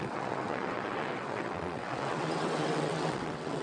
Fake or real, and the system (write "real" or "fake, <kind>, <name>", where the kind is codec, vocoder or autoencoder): fake, vocoder, WaveNeXt